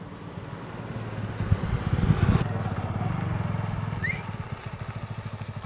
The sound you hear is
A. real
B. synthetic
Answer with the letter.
A